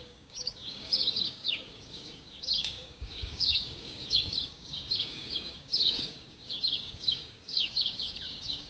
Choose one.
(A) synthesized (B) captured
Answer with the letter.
A